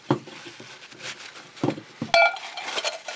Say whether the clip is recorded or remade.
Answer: recorded